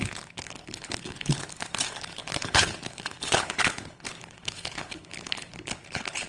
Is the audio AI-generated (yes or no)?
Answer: yes